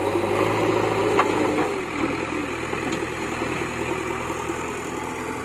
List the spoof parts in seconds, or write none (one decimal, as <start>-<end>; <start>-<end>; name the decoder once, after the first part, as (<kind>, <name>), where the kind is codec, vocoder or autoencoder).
none